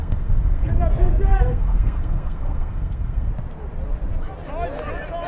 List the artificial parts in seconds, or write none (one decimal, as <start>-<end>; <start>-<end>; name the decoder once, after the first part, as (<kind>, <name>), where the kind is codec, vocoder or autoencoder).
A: 0.0-0.7 (codec, SNAC); 1.3-3.3